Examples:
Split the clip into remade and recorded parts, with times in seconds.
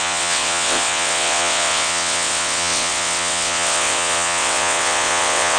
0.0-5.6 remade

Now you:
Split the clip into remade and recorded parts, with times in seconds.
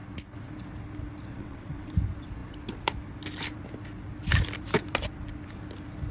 0.0-1.4 recorded; 1.4-1.9 remade; 1.9-6.1 recorded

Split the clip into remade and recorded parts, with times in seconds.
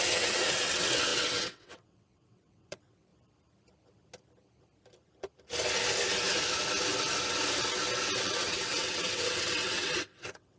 0.0-3.1 remade; 3.1-8.2 recorded; 8.2-10.6 remade